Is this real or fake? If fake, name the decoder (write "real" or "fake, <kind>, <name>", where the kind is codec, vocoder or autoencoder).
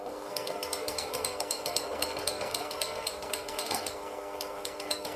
fake, codec, SNAC